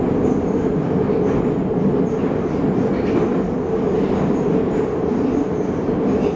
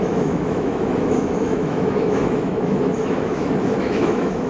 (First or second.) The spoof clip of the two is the second